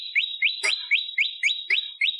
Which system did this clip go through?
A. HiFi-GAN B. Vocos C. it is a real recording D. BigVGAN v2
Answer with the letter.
D